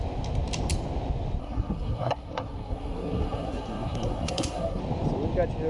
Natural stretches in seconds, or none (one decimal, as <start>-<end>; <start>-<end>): 0.0-1.4; 4.8-5.7